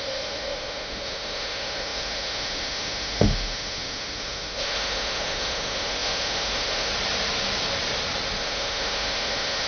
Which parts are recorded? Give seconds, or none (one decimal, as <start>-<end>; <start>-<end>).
6.9-8.4